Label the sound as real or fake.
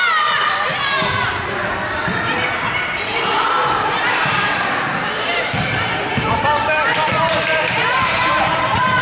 fake